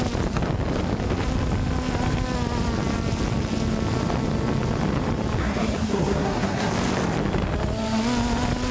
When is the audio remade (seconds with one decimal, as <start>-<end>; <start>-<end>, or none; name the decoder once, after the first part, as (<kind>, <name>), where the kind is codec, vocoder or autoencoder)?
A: 5.4-6.7 (codec, SNAC)